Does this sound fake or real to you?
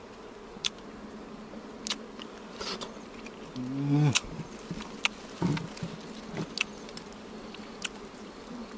real